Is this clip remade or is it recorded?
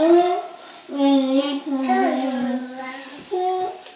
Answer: recorded